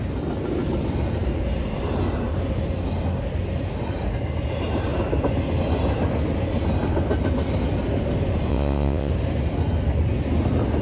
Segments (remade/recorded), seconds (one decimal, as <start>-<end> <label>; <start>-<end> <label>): 0.0-8.5 recorded; 8.5-9.1 remade; 9.1-10.8 recorded